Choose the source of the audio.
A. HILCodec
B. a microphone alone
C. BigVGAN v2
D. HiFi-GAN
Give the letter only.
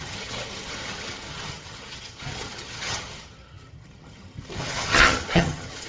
D